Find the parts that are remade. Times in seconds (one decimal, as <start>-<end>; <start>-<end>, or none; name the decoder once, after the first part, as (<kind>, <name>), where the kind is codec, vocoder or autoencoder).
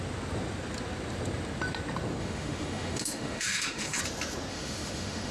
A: 2.2-4.0 (autoencoder, DAC-VAE); 4.5-5.3